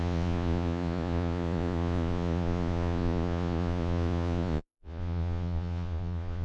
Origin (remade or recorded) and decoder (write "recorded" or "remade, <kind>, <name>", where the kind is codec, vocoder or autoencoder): remade, vocoder, Vocos